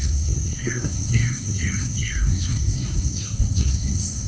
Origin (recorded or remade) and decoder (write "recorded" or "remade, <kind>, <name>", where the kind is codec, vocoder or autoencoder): remade, codec, SNAC